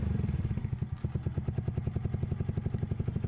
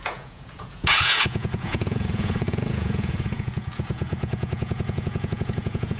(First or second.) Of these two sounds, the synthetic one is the second